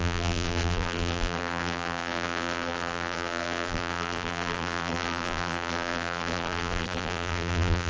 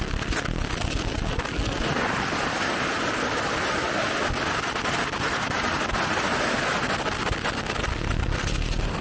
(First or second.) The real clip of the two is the second